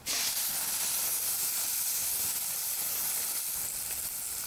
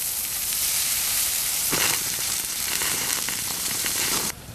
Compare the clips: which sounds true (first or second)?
first